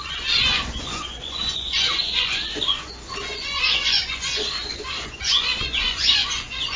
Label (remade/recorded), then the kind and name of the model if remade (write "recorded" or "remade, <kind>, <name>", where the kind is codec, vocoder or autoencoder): remade, vocoder, Vocos